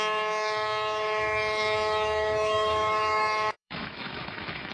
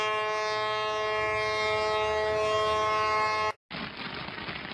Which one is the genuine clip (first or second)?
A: second